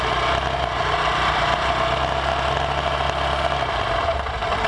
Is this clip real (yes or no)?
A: yes